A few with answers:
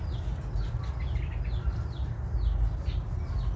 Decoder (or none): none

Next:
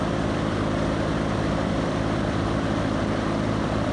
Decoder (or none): vocoder, BigVGAN v2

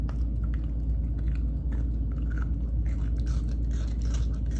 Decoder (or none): none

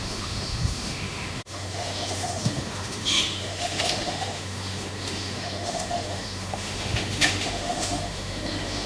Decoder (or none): autoencoder, DAC-VAE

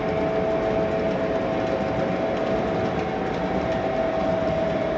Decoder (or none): none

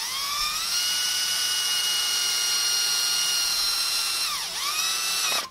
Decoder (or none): vocoder, Vocos